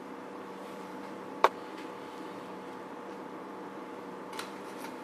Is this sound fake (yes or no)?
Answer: yes